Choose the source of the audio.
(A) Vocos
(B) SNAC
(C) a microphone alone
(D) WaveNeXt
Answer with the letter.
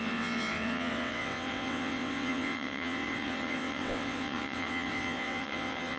D